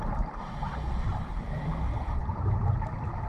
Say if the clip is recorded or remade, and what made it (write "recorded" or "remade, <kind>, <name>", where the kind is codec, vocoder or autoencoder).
recorded